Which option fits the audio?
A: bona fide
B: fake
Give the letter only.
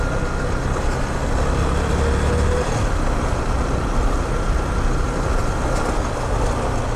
A